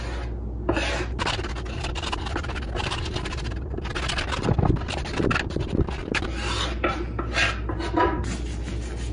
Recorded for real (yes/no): yes